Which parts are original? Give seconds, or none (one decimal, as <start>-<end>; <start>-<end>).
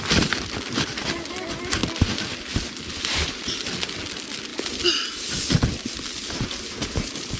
0.0-7.4